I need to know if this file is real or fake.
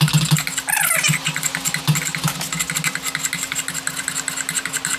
real